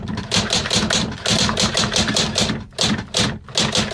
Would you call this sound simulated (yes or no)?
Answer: no